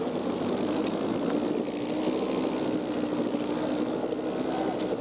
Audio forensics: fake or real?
real